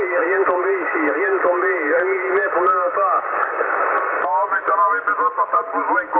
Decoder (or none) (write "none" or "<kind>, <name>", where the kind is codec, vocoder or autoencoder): none